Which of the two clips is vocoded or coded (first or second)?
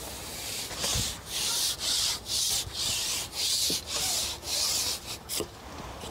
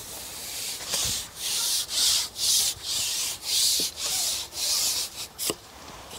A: second